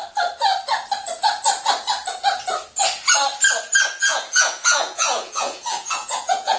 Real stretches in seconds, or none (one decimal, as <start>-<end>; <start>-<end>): 0.0-4.0

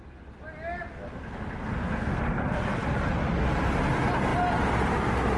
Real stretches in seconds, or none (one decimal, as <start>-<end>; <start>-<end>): 0.0-0.9; 2.2-5.4

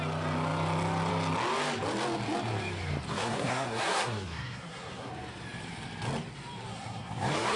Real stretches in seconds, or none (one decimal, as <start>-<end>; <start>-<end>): 0.0-3.1; 5.1-6.7

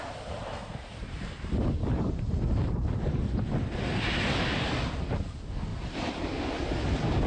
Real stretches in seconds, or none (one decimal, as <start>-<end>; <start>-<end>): 0.0-0.6; 3.3-5.7; 6.2-7.3

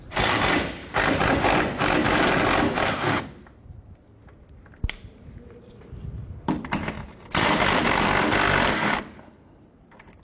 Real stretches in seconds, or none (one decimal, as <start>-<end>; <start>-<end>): 0.0-10.2